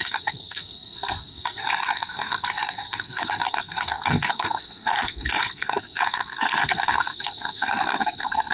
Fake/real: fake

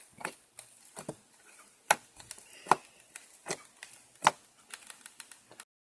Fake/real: real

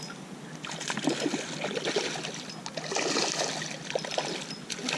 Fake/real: real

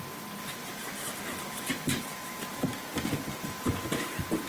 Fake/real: real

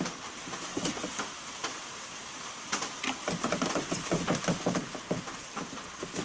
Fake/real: real